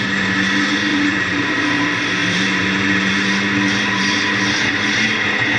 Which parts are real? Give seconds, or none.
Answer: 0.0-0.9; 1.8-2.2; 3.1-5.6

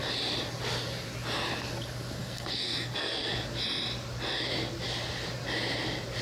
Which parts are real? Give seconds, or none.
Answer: 0.0-2.2; 3.3-6.2